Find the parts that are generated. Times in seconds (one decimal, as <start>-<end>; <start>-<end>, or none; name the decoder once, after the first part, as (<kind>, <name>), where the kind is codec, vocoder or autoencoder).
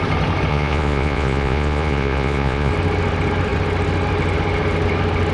0.5-2.7 (vocoder, Vocos)